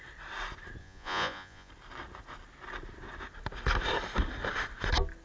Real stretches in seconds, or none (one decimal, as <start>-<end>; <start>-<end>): 0.0-0.8; 1.7-5.2